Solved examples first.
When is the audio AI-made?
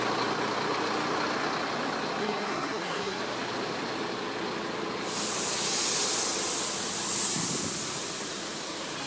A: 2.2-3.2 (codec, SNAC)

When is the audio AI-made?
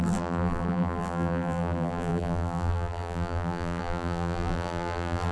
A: 0.0-5.3 (vocoder, BigVGAN v2)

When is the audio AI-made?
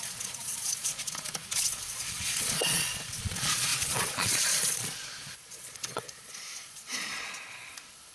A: 0.0-8.1 (vocoder, Vocos)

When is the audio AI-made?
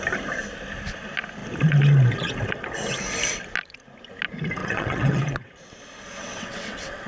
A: 4.6-5.5 (vocoder, WaveNeXt); 6.2-7.1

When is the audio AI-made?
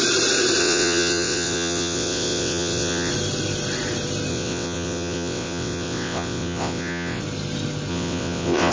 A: 0.6-3.1 (vocoder, WaveNeXt); 4.3-7.2; 7.9-8.7